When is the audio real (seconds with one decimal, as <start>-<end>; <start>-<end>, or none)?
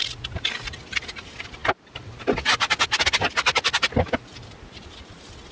0.0-5.5